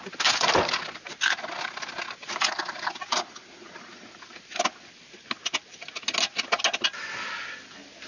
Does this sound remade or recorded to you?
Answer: recorded